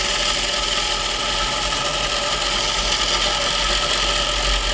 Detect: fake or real real